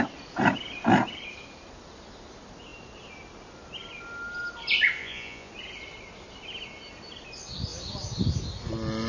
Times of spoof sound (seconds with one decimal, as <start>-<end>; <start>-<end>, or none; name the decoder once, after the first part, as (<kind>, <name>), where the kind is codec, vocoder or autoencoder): 5.0-5.5 (vocoder, Vocos)